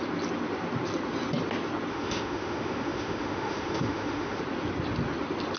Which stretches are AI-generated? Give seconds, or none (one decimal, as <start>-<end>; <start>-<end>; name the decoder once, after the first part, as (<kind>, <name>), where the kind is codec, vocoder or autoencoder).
1.9-4.4 (autoencoder, DAC-VAE)